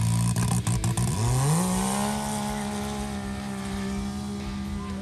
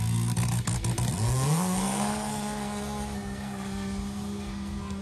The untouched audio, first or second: first